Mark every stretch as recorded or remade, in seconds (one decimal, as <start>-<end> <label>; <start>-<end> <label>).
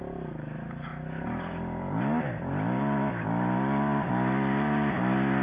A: 0.0-5.4 recorded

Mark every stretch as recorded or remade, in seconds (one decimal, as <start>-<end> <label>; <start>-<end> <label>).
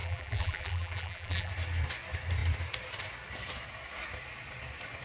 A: 0.0-1.5 remade; 1.5-5.0 recorded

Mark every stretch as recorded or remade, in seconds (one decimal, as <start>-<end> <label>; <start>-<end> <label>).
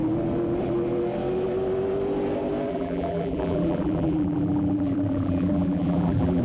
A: 0.0-2.7 recorded; 2.7-6.4 remade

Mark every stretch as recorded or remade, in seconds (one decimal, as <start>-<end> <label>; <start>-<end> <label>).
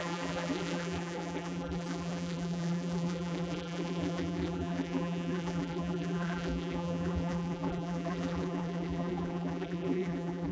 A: 0.0-10.5 remade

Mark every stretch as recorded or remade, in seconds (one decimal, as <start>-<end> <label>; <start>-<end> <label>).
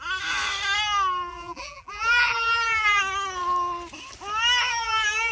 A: 0.0-1.3 recorded; 1.3-3.0 remade; 3.0-4.7 recorded; 4.7-5.3 remade